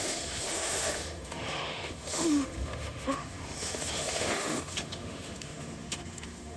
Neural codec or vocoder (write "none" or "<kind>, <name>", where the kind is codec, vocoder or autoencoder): autoencoder, DAC-VAE